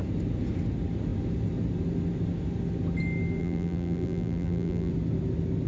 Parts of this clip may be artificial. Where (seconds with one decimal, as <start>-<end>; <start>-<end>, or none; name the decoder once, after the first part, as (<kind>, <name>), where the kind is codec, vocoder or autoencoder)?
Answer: 3.4-4.9 (vocoder, BigVGAN v2)